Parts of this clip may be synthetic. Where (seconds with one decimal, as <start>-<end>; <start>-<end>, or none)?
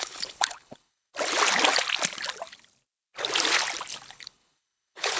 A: 0.0-1.1; 4.1-5.2